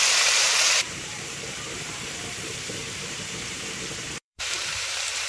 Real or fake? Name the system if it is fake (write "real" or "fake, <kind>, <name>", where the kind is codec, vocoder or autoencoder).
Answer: fake, vocoder, BigVGAN v2